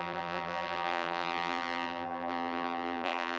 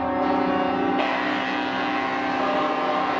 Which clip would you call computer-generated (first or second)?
first